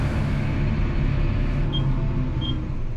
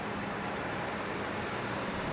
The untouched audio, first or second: first